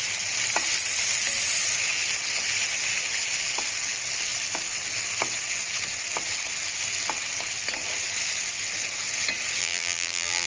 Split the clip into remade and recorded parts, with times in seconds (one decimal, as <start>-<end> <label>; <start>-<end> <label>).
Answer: 0.0-9.6 recorded; 9.6-10.5 remade